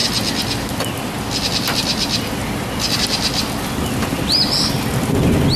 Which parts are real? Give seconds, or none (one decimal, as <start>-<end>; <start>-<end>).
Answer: 0.0-2.4; 4.7-5.6